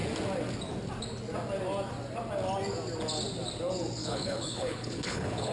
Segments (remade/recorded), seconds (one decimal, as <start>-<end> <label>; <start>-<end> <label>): 0.0-4.0 recorded; 4.0-5.5 remade